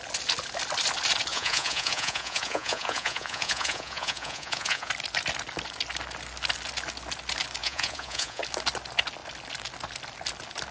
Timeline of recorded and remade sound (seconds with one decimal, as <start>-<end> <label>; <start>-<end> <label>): 0.0-1.3 recorded; 1.3-4.9 remade; 4.9-7.6 recorded; 7.6-8.4 remade; 8.4-10.7 recorded

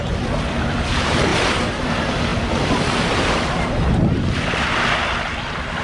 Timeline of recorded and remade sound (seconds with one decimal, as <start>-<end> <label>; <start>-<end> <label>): 0.0-1.3 recorded; 1.3-1.9 remade; 1.9-5.8 recorded